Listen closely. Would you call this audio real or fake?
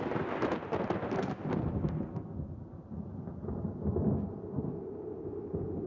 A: real